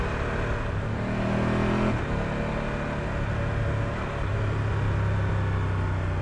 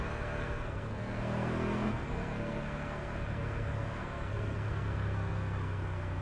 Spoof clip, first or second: second